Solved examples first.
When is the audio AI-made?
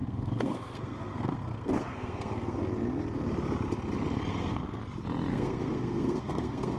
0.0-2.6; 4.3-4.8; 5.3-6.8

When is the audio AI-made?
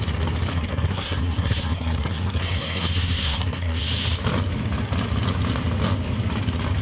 0.5-3.8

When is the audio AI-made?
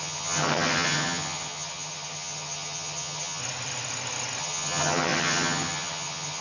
0.0-3.4; 4.4-6.4